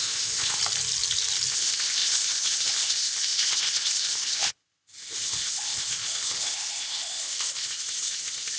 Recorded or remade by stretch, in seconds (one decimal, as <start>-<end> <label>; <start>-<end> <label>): 0.0-0.6 remade; 0.6-1.5 recorded; 1.5-8.6 remade

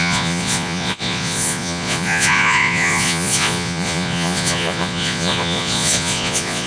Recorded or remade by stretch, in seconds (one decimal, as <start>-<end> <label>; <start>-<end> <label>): 0.0-6.7 remade